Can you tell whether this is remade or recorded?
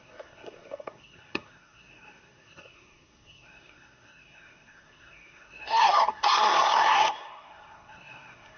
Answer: remade